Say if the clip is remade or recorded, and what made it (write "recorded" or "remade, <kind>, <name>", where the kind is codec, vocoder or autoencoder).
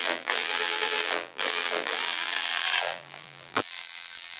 remade, vocoder, BigVGAN v2